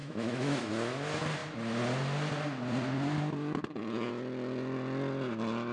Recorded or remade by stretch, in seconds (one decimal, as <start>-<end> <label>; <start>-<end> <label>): 0.0-0.7 remade; 0.7-5.7 recorded